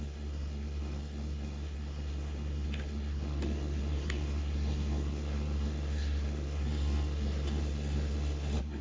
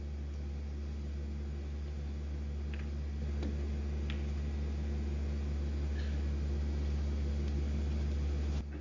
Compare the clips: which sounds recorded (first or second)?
second